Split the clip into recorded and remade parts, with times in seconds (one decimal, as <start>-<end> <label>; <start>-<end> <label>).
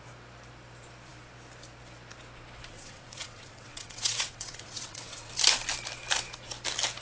0.0-2.7 recorded; 2.7-5.3 remade; 5.3-7.0 recorded